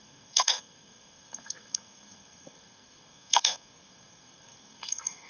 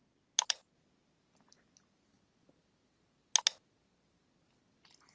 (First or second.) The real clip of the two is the second